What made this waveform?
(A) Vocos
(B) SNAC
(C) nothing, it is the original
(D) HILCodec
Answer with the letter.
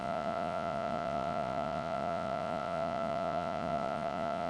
A